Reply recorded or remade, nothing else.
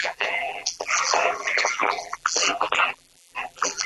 remade